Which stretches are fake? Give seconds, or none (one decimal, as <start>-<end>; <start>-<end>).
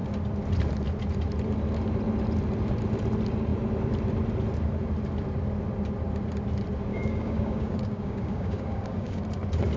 6.9-9.2